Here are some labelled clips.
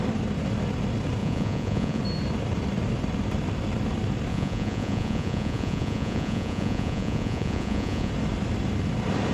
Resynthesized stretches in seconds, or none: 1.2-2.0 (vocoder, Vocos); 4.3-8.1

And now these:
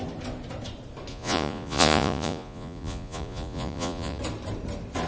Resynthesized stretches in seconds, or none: 1.1-4.2 (vocoder, Vocos)

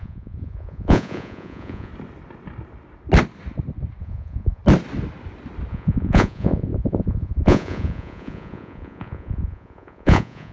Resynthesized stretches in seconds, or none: 0.0-1.9 (vocoder, Vocos); 4.0-4.6; 5.7-10.5

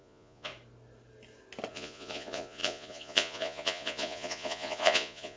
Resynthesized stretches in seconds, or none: 0.0-0.5 (vocoder, Vocos); 1.7-5.4